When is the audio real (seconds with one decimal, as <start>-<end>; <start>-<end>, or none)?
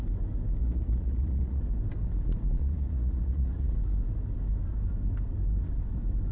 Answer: 0.0-0.6; 1.6-2.6; 3.7-6.3